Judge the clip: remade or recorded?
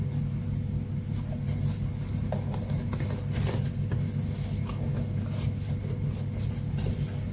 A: recorded